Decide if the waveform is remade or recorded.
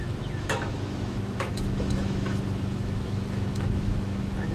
remade